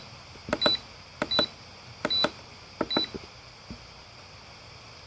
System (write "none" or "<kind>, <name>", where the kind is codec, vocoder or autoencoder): none